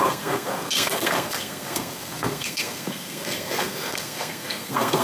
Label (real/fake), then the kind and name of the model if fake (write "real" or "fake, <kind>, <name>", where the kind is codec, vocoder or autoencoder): fake, codec, SNAC